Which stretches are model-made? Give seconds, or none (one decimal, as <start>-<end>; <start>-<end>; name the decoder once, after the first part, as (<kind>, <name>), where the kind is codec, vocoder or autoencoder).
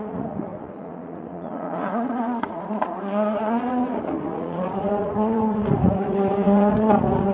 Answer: 0.0-7.3 (vocoder, Vocos)